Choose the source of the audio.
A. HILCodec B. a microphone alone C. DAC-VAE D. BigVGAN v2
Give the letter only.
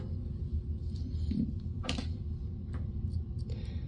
D